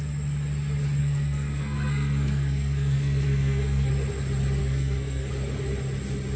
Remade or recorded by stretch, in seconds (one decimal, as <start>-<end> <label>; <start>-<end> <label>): 0.0-1.0 recorded; 1.0-3.9 remade; 3.9-4.6 recorded; 4.6-5.3 remade; 5.3-6.4 recorded